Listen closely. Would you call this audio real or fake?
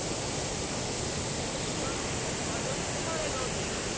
real